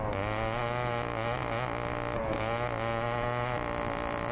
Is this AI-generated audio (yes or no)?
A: no